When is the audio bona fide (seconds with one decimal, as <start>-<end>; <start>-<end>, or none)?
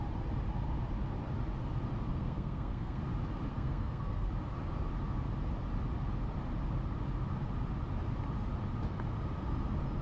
0.0-2.1; 3.0-3.5; 4.3-10.0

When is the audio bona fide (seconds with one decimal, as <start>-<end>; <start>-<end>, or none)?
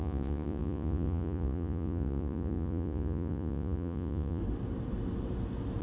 4.4-5.8